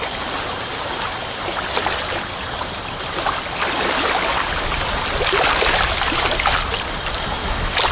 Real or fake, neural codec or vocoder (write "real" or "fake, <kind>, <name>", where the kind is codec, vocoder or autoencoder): real